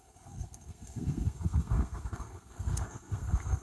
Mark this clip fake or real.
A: fake